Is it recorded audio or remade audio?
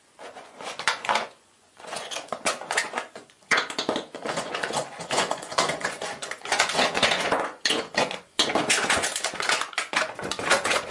remade